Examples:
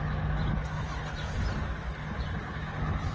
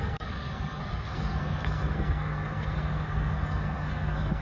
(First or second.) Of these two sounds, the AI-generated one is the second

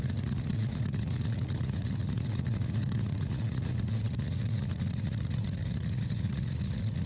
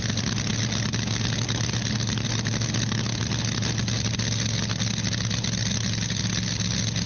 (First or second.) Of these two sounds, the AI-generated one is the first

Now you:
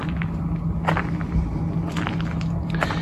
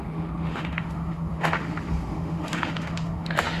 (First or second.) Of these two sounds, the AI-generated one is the second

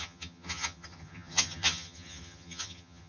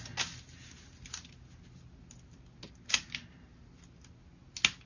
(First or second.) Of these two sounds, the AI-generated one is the first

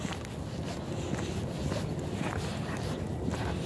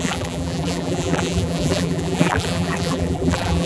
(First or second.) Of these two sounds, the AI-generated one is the second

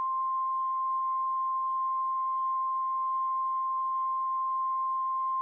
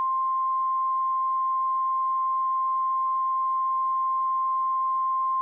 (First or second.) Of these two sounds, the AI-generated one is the first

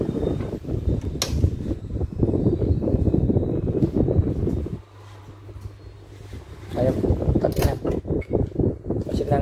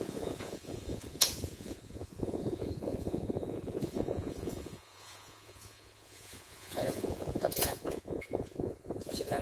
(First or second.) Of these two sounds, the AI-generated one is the second